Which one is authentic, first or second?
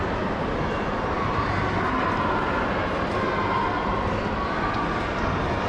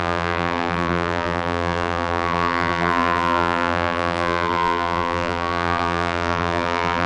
first